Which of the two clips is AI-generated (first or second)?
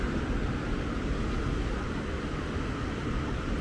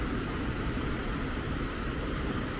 second